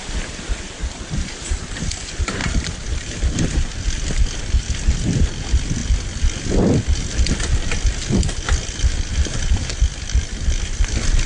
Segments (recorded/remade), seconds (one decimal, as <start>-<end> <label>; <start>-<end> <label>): 0.0-2.4 recorded; 2.4-3.7 remade; 3.7-9.1 recorded; 9.1-9.8 remade; 9.8-11.3 recorded